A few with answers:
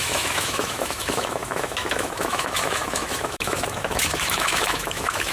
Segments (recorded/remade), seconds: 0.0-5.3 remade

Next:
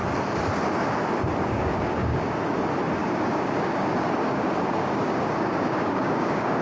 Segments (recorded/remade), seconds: 0.0-1.4 recorded; 1.4-2.4 remade; 2.4-3.0 recorded; 3.0-6.6 remade

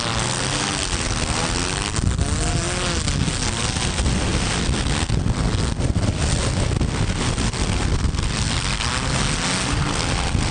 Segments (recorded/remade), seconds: 0.0-10.5 recorded

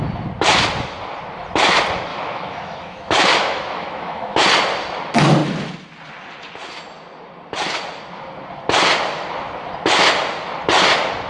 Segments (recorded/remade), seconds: 0.0-2.1 recorded; 2.1-4.4 remade; 4.4-11.3 recorded